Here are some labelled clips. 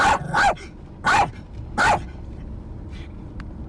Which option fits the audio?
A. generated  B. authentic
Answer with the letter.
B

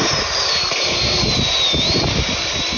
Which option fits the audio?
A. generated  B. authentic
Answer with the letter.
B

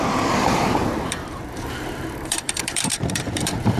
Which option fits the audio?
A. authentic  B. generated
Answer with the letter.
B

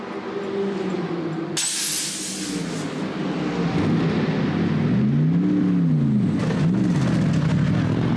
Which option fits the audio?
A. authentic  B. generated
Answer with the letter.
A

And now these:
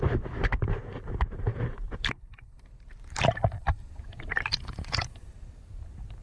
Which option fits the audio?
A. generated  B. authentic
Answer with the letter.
A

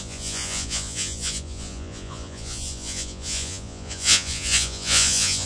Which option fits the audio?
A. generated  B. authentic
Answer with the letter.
A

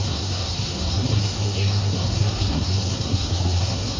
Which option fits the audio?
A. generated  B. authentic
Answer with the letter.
A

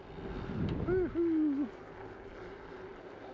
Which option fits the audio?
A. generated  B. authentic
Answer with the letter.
B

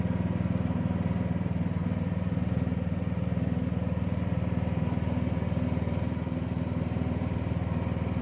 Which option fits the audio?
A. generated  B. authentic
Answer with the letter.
B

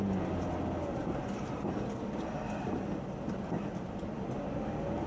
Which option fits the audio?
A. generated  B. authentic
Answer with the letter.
B